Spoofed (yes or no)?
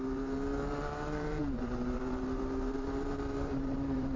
yes